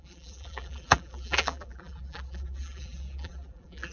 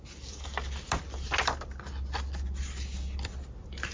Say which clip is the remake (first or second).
first